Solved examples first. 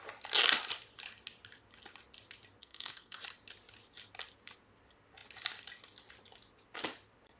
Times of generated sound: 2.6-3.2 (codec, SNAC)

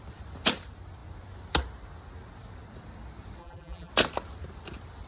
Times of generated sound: 3.4-3.9 (vocoder, BigVGAN v2)

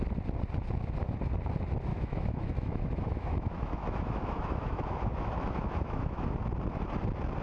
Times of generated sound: 1.9-6.3 (autoencoder, DAC-VAE)

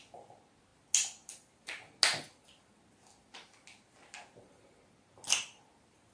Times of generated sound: none

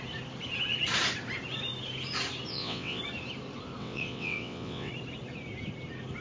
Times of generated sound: 2.5-3.0 (vocoder, WaveNeXt); 3.8-4.9